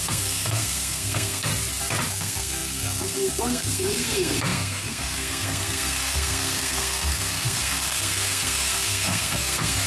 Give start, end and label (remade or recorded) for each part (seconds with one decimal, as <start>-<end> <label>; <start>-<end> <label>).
0.0-1.5 remade; 1.5-2.1 recorded; 2.1-9.9 remade